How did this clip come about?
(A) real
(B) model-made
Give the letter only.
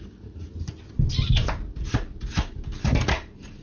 A